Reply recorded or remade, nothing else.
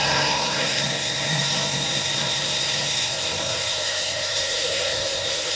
remade